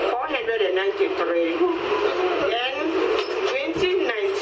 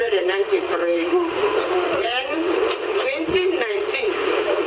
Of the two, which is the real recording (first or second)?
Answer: first